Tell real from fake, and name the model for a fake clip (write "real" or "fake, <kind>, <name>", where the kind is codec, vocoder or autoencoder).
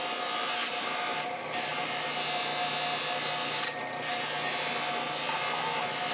real